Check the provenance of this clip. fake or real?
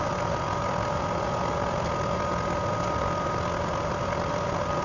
real